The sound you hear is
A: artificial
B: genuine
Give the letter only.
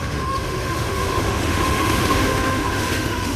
A